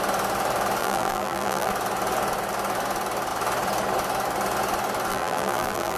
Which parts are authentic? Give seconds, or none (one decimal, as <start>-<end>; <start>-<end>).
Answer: 0.0-0.8; 1.7-5.1